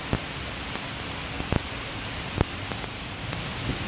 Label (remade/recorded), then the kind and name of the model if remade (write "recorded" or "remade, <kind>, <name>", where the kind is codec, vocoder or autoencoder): remade, vocoder, BigVGAN v2